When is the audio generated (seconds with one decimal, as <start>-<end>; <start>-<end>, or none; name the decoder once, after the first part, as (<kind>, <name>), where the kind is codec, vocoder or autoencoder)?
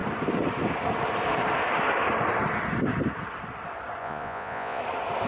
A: 4.0-4.8 (vocoder, Vocos)